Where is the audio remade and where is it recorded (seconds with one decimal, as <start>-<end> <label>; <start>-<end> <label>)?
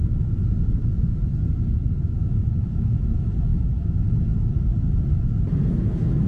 0.0-1.2 remade; 1.2-2.0 recorded; 2.0-4.7 remade; 4.7-5.5 recorded; 5.5-6.3 remade